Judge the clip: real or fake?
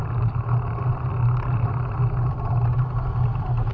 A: real